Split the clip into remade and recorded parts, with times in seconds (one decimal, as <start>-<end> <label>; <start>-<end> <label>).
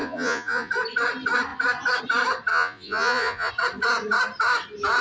0.0-0.7 remade; 0.7-2.5 recorded; 2.5-3.5 remade; 3.5-5.0 recorded